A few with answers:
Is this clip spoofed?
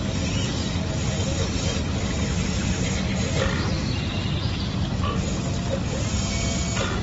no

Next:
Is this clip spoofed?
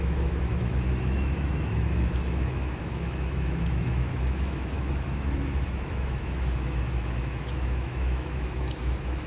yes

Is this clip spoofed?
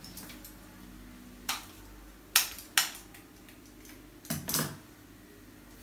no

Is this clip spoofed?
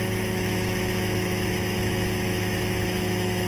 yes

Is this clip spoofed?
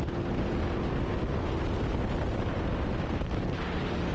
no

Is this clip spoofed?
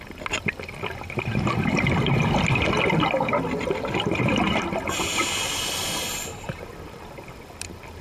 no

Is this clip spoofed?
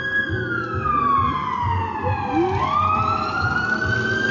no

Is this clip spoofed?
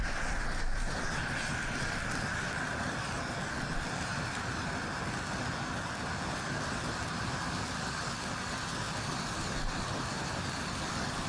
no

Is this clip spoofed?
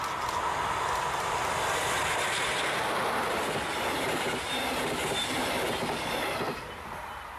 no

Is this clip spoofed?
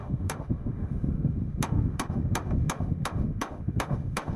yes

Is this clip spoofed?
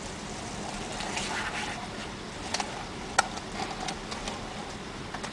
no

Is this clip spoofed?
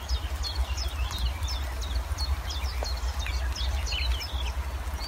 no